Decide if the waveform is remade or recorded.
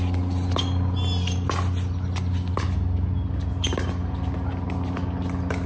recorded